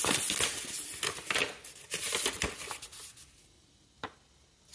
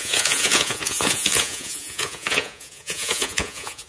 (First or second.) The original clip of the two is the first